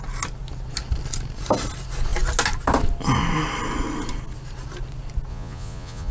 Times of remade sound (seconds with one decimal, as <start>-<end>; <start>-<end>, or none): 5.3-6.1